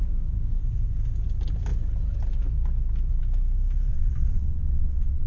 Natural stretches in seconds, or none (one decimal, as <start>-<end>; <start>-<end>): 0.0-3.9